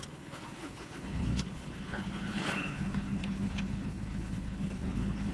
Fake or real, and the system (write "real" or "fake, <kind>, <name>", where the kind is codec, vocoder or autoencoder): fake, codec, HILCodec